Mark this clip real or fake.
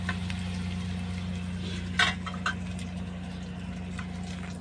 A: real